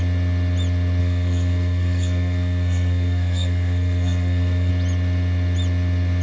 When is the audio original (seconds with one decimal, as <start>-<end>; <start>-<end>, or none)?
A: 0.0-1.0; 4.7-6.2

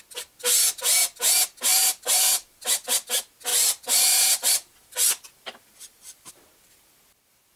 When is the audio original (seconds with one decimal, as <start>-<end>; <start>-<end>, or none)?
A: 0.0-1.7; 3.1-3.5; 6.3-7.6

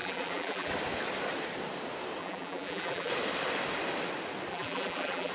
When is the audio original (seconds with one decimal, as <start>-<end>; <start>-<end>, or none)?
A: 0.7-2.2; 3.1-4.5

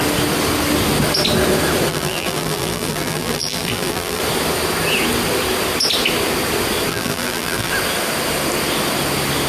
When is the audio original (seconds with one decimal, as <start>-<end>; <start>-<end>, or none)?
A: 0.0-1.9; 4.2-6.9; 7.7-9.5

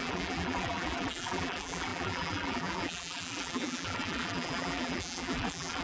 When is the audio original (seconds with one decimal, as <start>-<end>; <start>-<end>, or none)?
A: none

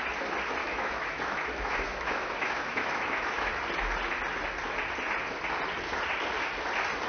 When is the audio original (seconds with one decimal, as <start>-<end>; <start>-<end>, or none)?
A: 0.0-0.6; 3.5-7.1